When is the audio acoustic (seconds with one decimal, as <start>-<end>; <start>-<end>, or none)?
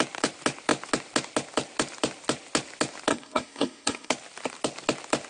0.0-3.1; 4.1-5.3